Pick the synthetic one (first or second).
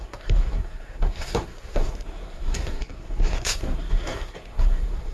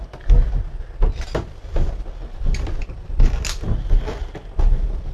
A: first